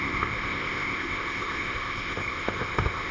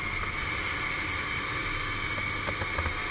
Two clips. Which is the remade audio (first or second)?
first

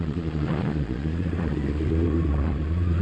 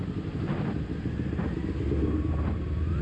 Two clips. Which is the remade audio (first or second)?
first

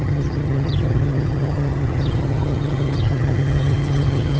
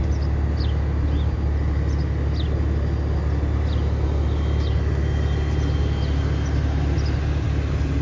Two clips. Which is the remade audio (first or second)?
first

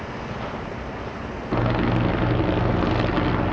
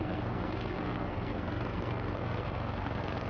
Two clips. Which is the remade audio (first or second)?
second